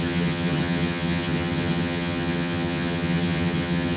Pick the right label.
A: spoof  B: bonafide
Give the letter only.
A